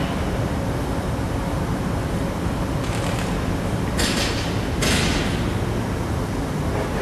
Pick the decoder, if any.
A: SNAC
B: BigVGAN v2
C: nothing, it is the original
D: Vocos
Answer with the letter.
C